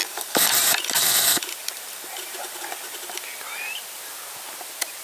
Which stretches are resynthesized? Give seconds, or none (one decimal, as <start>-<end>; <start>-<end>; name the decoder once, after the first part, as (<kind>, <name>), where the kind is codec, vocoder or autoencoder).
0.0-3.0 (vocoder, BigVGAN v2)